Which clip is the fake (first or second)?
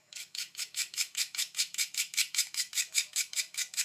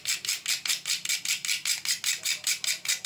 first